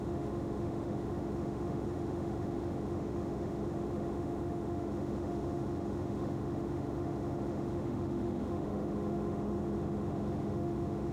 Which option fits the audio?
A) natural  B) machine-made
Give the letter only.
B